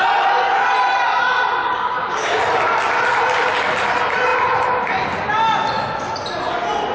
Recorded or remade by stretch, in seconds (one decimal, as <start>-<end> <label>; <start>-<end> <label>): 0.0-1.6 recorded; 1.6-2.4 remade; 2.4-6.9 recorded